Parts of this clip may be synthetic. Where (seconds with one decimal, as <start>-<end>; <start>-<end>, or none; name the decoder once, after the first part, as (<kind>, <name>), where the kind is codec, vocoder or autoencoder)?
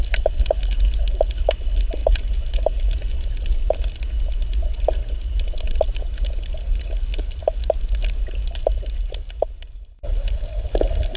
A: none